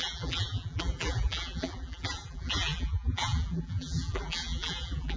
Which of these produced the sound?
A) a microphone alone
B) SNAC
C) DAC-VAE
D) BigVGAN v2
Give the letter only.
D